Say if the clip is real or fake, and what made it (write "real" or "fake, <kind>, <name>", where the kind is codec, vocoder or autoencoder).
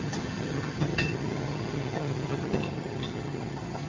fake, vocoder, HiFi-GAN